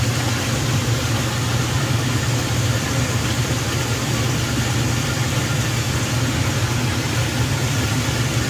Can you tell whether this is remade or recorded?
recorded